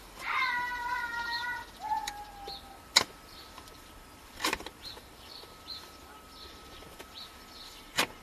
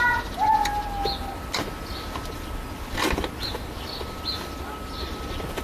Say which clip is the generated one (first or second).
first